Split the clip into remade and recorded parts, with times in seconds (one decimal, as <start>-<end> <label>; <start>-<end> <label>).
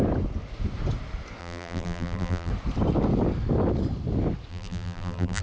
0.0-1.4 recorded; 1.4-2.5 remade; 2.5-4.5 recorded; 4.5-5.4 remade